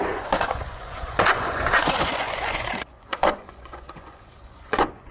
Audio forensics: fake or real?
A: fake